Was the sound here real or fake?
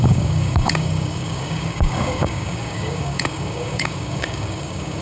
fake